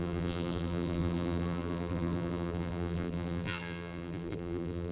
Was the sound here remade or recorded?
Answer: remade